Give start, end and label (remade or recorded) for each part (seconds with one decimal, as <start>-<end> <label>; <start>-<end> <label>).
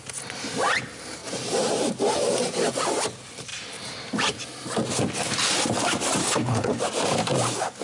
0.0-6.2 recorded; 6.2-6.8 remade; 6.8-7.8 recorded